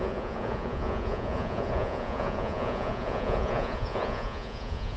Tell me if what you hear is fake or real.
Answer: fake